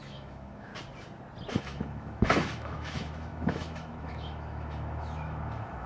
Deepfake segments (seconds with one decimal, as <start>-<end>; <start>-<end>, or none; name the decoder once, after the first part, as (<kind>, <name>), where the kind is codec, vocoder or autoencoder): 0.0-0.7 (autoencoder, DAC-VAE); 1.6-5.9